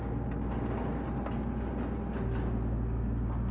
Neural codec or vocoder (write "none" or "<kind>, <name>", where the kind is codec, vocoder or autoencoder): none